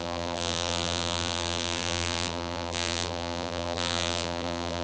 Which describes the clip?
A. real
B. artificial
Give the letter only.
B